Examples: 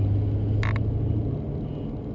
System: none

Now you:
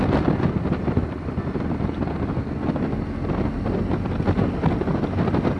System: none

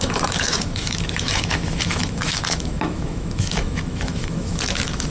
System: autoencoder, DAC-VAE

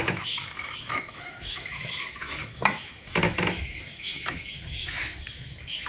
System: autoencoder, DAC-VAE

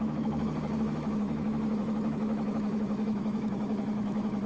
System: autoencoder, DAC-VAE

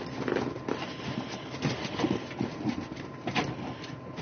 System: none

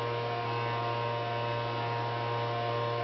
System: none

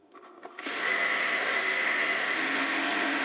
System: autoencoder, DAC-VAE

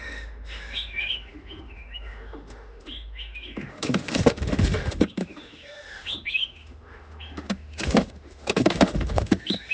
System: autoencoder, DAC-VAE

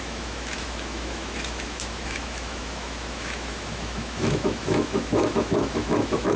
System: autoencoder, DAC-VAE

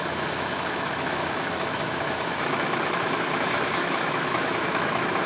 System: autoencoder, DAC-VAE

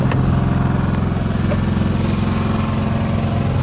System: none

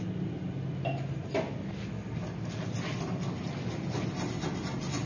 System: none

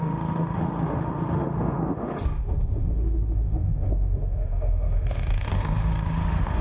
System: autoencoder, DAC-VAE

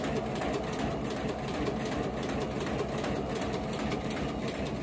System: none